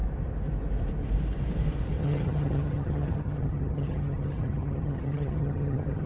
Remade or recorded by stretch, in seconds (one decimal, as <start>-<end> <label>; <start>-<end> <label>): 0.0-2.0 recorded; 2.0-6.1 remade